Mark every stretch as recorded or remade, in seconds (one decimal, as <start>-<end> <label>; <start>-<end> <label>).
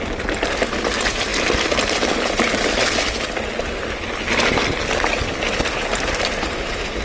0.0-7.0 recorded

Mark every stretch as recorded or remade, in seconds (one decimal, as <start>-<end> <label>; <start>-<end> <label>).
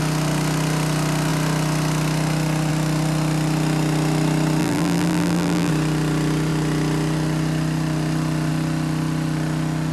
0.0-4.6 recorded; 4.6-5.7 remade; 5.7-9.9 recorded